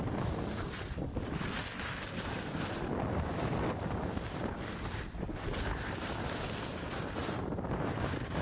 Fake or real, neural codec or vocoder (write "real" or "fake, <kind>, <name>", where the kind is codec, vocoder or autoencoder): fake, vocoder, BigVGAN v2